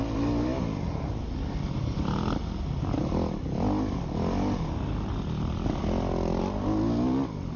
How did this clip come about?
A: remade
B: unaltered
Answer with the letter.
B